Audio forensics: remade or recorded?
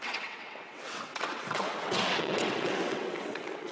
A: remade